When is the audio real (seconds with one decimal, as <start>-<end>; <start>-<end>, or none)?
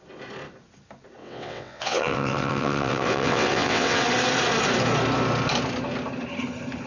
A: 0.0-1.2; 4.0-6.9